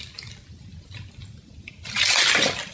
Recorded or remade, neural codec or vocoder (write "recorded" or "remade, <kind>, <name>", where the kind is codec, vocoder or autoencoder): recorded